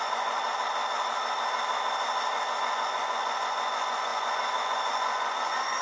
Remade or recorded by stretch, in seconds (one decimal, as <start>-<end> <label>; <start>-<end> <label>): 0.0-0.4 remade; 0.4-2.6 recorded; 2.6-5.8 remade